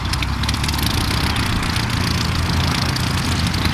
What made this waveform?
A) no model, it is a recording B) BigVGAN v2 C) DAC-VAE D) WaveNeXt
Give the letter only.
A